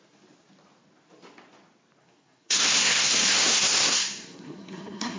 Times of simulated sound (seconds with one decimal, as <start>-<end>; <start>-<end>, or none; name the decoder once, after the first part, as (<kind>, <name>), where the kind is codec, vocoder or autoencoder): 2.0-5.2 (codec, SNAC)